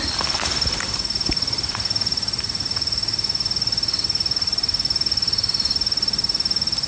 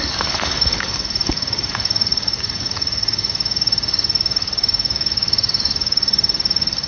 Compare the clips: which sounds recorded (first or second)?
first